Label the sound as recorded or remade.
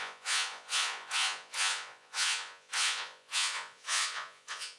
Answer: remade